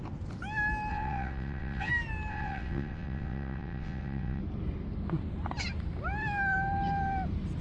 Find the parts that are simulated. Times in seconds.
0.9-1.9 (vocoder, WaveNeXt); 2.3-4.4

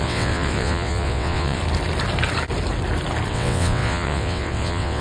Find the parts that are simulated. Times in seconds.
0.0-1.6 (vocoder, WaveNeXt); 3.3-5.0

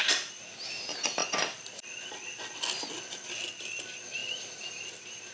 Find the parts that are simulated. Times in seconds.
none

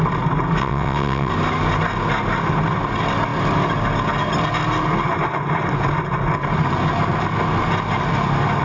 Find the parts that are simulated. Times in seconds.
0.6-1.3 (vocoder, WaveNeXt)

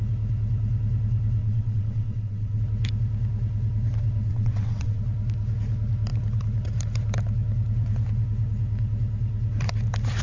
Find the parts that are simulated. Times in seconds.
1.4-2.6 (vocoder, WaveNeXt); 4.2-5.0